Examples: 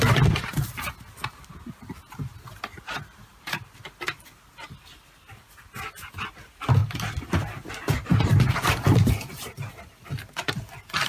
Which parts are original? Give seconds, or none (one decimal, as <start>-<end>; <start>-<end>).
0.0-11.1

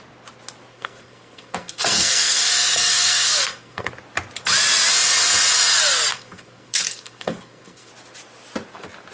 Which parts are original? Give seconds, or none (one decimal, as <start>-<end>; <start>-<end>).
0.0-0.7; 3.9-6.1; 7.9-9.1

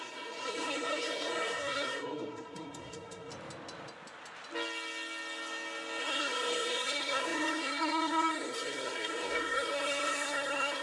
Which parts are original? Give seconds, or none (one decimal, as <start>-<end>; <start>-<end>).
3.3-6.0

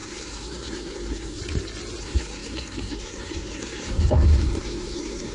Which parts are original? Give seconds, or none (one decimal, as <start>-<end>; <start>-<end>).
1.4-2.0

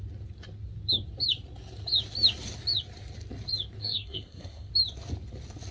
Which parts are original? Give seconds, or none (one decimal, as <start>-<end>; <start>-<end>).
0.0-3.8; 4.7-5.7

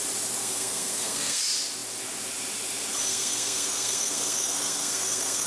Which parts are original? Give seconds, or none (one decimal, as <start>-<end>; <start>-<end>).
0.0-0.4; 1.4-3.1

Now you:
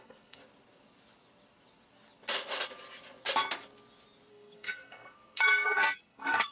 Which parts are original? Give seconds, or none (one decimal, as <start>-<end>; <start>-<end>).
0.4-4.3

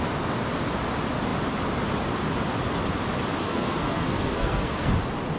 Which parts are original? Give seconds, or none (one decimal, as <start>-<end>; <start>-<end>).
0.0-3.4; 4.9-5.4